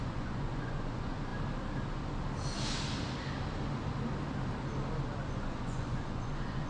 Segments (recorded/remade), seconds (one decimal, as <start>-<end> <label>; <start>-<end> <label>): 0.0-1.3 remade; 1.3-5.3 recorded; 5.3-6.7 remade